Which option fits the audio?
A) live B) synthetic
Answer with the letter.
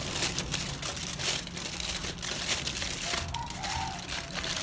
A